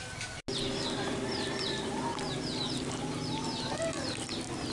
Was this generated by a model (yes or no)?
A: no